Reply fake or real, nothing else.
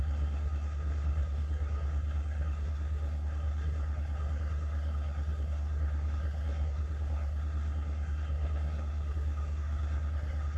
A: fake